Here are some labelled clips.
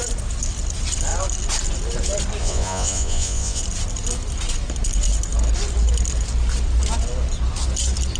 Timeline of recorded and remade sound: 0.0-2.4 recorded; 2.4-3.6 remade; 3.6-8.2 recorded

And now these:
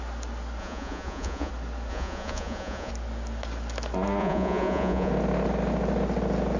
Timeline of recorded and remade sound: 0.0-0.6 recorded; 0.6-1.5 remade; 1.5-1.9 recorded; 1.9-2.9 remade; 2.9-4.2 recorded; 4.2-5.1 remade; 5.1-6.6 recorded

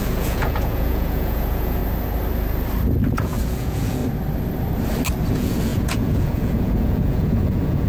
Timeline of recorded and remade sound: 0.0-1.8 remade; 1.8-3.1 recorded; 3.1-4.0 remade; 4.0-5.3 recorded; 5.3-7.9 remade

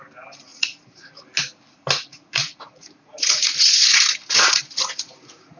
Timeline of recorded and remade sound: 0.0-0.5 recorded; 0.5-1.2 remade; 1.2-2.1 recorded; 2.1-5.6 remade